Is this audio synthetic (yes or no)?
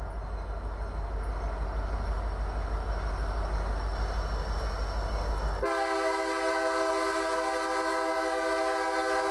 no